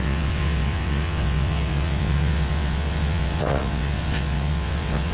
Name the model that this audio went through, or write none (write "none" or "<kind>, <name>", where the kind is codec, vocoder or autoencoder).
vocoder, WaveNeXt